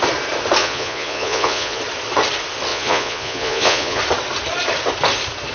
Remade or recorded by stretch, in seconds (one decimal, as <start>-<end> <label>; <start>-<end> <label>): 0.0-0.6 recorded; 0.6-1.8 remade; 1.8-2.7 recorded; 2.7-4.0 remade; 4.0-5.5 recorded